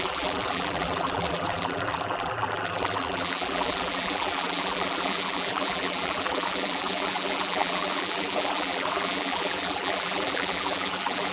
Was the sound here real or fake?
fake